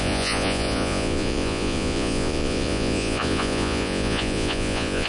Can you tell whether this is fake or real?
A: fake